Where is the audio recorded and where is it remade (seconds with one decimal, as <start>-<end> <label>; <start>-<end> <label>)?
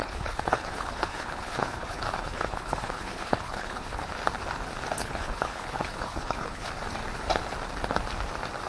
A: 0.0-4.1 remade; 4.1-5.0 recorded; 5.0-6.7 remade; 6.7-8.7 recorded